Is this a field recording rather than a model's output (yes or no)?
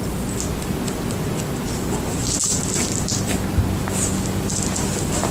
yes